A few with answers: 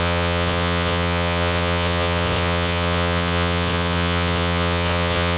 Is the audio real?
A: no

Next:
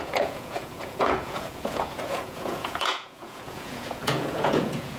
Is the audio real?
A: no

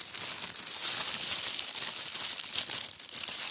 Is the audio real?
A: yes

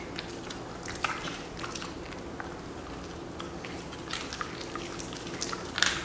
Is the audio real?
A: yes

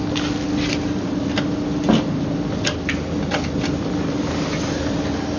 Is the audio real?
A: yes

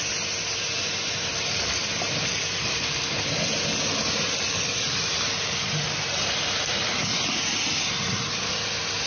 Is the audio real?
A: yes